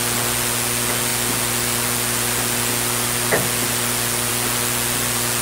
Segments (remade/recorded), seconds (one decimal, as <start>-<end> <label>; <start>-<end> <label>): 0.0-5.4 recorded